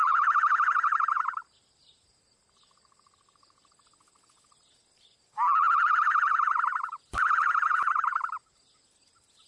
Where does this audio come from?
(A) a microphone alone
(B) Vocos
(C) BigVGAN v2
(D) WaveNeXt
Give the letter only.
A